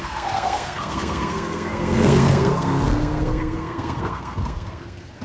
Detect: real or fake fake